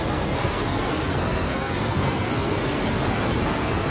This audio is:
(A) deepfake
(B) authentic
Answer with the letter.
A